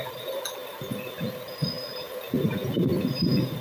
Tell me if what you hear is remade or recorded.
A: recorded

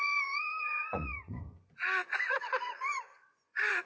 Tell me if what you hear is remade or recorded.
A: remade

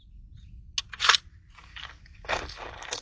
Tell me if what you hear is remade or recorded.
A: recorded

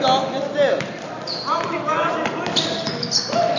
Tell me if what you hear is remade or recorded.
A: recorded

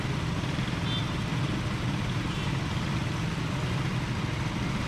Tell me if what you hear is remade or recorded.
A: recorded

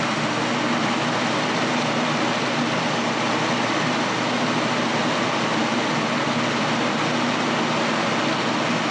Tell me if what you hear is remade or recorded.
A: recorded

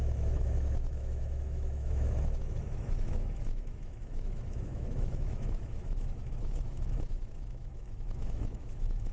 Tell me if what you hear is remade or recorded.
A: remade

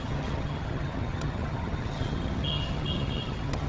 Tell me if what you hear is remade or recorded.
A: remade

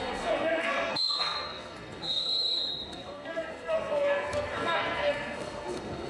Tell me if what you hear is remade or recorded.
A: remade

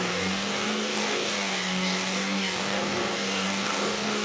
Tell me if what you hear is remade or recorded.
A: remade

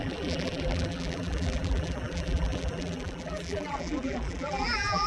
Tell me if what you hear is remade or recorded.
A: remade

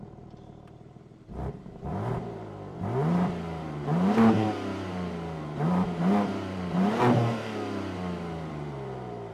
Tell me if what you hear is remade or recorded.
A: remade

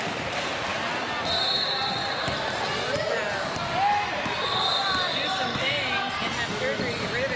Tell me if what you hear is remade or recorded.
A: recorded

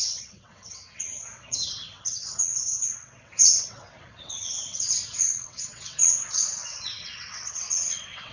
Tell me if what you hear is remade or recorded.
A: remade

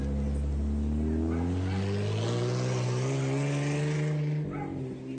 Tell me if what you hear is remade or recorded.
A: recorded